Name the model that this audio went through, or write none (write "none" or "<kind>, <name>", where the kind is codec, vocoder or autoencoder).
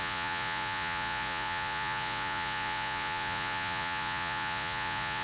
vocoder, Vocos